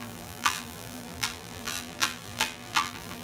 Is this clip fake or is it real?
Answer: fake